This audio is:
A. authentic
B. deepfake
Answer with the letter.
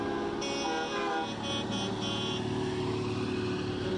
A